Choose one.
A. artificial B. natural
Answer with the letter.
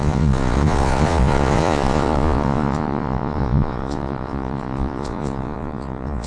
A